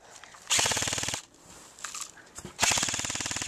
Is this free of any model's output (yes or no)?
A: yes